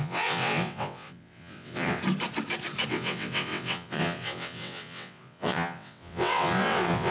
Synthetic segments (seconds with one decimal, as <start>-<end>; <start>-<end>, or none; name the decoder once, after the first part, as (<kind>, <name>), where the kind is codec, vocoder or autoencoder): 0.0-2.0 (vocoder, WaveNeXt); 2.9-7.1